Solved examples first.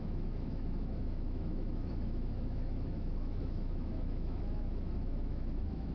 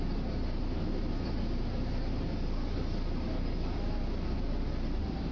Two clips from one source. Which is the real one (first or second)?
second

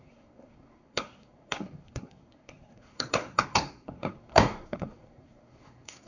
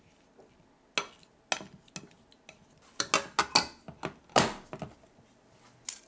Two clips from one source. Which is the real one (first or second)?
second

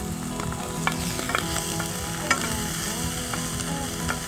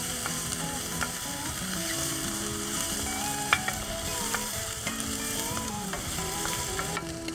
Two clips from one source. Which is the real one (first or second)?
first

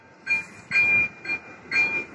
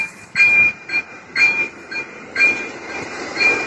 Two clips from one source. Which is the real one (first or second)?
first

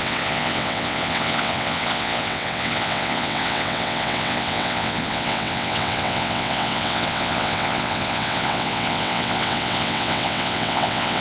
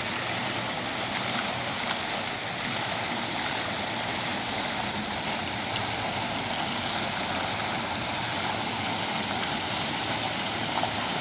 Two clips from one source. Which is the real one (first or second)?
second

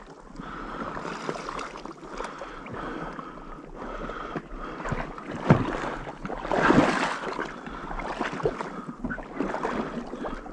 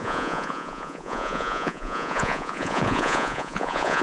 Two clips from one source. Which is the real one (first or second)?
first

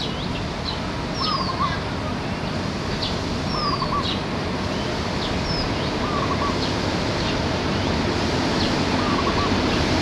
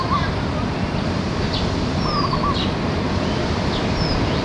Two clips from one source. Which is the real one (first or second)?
first